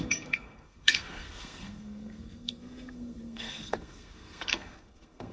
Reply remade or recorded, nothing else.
remade